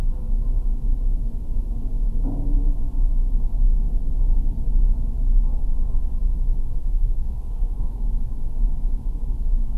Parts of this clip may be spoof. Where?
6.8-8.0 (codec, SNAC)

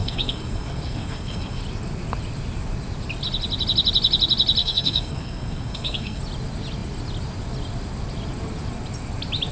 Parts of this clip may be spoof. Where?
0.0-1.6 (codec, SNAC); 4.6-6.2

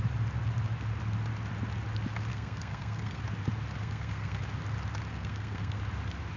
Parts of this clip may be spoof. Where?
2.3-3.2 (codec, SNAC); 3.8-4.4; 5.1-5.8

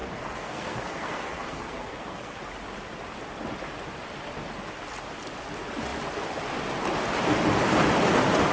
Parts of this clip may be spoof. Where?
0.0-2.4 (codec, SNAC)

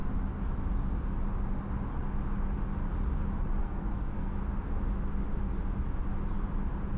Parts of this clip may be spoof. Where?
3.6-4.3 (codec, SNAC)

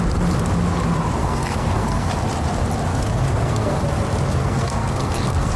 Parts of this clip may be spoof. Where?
1.2-2.1 (codec, SNAC); 2.9-3.8; 4.4-5.6

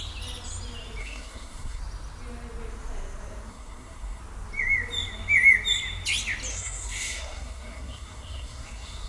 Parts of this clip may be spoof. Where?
1.0-1.8 (codec, SNAC); 3.5-4.2; 6.5-9.1

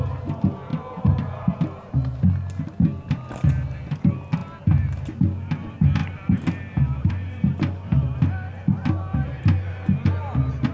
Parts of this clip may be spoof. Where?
none